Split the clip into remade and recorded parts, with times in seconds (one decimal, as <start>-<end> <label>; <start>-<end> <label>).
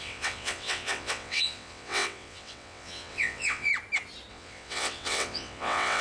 0.0-3.7 remade; 3.7-4.3 recorded; 4.3-6.0 remade